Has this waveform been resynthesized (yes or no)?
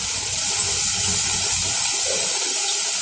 no